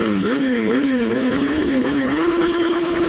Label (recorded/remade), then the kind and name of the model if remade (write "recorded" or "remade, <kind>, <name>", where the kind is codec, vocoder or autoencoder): remade, codec, HILCodec